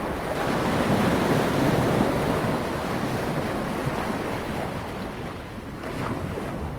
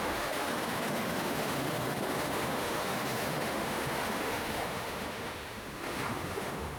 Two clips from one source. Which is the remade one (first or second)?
second